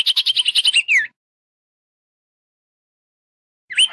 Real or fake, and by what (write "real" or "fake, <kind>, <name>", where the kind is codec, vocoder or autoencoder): real